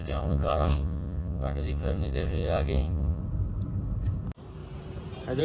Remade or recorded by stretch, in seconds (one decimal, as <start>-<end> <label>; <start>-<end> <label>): 0.0-3.2 remade; 3.2-5.4 recorded

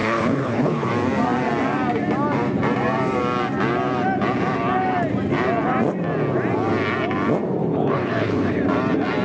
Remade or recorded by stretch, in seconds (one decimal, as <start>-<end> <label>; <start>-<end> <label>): 0.0-0.9 remade; 0.9-7.6 recorded; 7.6-8.6 remade; 8.6-9.2 recorded

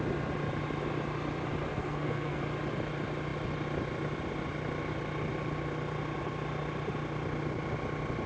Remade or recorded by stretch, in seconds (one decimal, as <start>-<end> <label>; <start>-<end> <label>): 0.0-1.7 recorded; 1.7-2.4 remade; 2.4-8.3 recorded